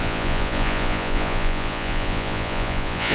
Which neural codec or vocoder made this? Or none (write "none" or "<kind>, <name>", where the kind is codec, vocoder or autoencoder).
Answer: vocoder, Vocos